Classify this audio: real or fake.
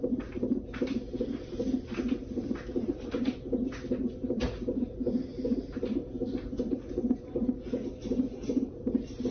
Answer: real